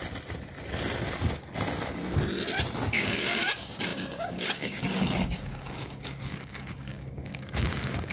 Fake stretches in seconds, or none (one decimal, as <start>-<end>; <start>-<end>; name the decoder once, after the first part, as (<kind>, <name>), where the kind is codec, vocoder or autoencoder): 2.9-8.1 (codec, DAC)